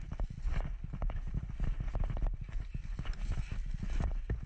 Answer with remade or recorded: recorded